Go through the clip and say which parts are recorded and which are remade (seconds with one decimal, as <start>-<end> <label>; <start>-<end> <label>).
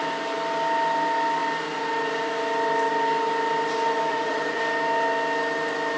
0.0-4.1 recorded; 4.1-4.6 remade; 4.6-6.0 recorded